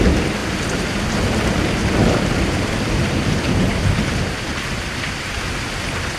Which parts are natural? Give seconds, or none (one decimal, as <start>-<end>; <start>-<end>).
0.0-1.8; 5.5-6.2